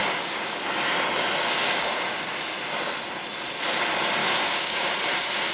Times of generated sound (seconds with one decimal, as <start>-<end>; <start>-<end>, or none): 4.2-4.9